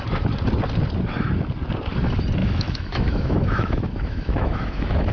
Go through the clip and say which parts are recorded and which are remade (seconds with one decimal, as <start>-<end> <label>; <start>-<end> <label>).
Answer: 0.0-2.4 recorded; 2.4-5.1 remade